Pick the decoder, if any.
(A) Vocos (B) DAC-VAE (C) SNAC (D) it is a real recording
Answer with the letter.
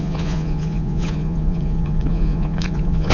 A